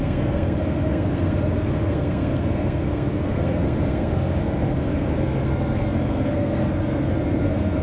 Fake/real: fake